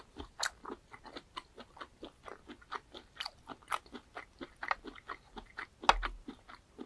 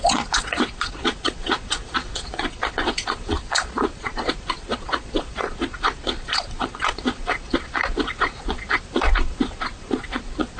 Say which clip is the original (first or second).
first